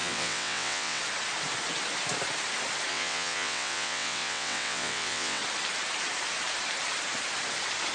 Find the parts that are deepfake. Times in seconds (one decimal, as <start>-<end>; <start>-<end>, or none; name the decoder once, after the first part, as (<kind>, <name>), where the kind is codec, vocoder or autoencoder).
0.0-1.0 (vocoder, WaveNeXt); 2.9-5.4

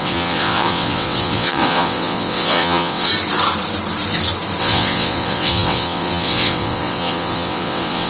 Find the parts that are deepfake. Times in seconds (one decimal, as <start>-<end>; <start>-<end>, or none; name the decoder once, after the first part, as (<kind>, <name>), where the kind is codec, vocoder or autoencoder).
0.0-3.1 (vocoder, WaveNeXt); 4.6-8.1

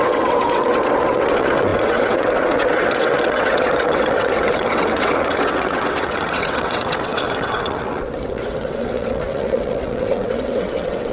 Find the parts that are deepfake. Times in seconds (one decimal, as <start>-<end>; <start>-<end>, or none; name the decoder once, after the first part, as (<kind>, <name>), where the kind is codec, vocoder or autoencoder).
0.0-11.1 (vocoder, WaveNeXt)

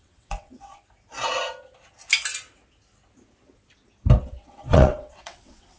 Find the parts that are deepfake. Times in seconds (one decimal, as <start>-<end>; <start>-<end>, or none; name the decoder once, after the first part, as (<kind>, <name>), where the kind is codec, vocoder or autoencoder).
0.0-0.7 (vocoder, WaveNeXt); 4.2-5.8

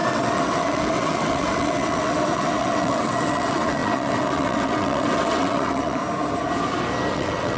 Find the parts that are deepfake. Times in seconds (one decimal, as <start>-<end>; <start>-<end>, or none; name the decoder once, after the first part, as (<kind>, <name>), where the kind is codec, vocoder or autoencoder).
0.0-6.0 (vocoder, WaveNeXt); 7.1-7.6

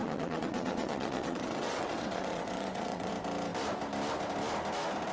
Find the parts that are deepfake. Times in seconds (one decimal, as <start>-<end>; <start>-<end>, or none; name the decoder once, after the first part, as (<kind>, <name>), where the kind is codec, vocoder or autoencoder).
0.0-3.1 (vocoder, WaveNeXt)